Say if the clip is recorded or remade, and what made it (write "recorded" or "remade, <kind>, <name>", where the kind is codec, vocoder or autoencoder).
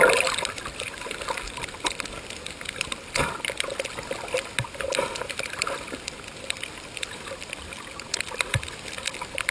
recorded